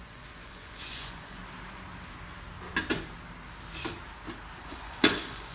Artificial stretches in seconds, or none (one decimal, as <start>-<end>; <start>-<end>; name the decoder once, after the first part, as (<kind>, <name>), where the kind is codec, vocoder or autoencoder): 0.0-1.4 (vocoder, Vocos); 4.6-5.5